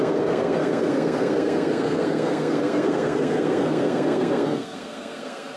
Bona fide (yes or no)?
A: no